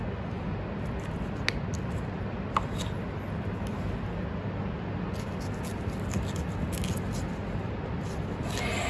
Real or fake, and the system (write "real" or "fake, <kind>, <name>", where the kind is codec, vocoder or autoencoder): real